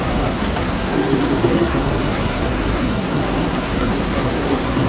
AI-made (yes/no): yes